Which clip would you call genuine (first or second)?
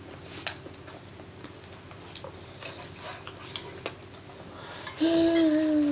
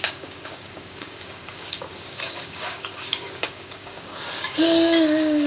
first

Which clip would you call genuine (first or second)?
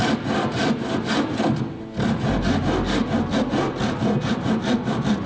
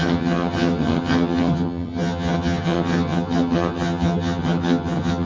first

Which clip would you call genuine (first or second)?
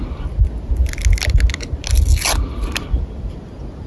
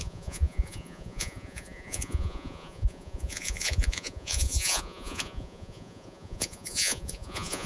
first